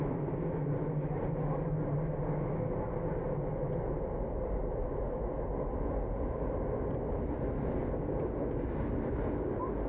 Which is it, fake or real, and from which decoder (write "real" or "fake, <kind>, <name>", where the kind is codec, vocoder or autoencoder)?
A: real